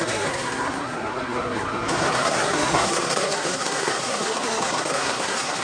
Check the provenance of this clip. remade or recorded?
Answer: remade